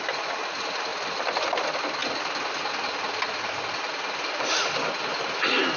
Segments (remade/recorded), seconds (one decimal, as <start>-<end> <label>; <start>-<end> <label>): 0.0-2.0 recorded; 2.0-2.7 remade; 2.7-5.8 recorded